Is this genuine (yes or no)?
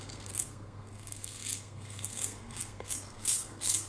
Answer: no